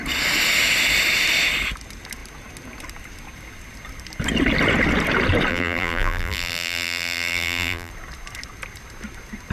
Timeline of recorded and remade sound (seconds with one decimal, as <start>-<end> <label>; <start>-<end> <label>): 0.0-5.5 recorded; 5.5-7.9 remade; 7.9-9.5 recorded